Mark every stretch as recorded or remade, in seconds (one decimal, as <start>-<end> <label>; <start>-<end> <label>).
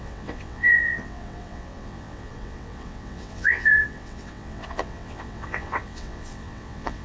0.0-7.0 remade